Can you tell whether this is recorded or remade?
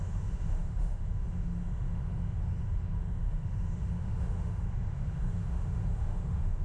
remade